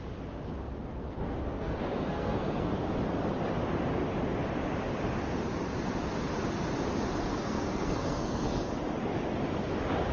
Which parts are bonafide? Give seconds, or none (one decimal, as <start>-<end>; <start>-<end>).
0.0-0.9; 2.7-7.2; 8.7-10.1